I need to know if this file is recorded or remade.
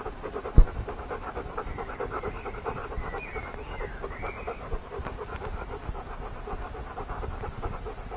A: recorded